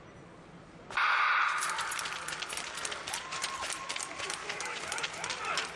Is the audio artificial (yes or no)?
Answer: yes